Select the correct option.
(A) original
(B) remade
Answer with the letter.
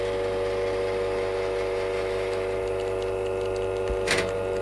A